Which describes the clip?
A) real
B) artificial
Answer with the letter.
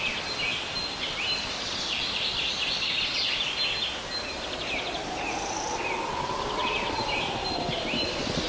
A